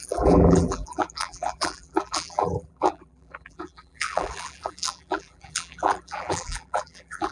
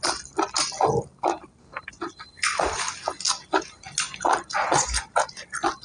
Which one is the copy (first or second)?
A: first